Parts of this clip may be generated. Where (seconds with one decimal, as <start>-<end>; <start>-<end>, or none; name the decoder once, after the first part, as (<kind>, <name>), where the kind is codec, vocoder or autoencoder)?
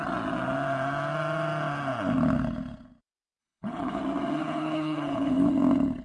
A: 3.4-4.0 (codec, HILCodec); 4.4-5.5